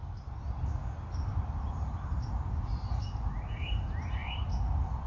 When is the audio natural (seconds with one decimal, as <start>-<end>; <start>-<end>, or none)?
0.0-5.1